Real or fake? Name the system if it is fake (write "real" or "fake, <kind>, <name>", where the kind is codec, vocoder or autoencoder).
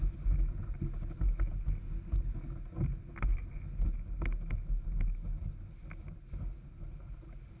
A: real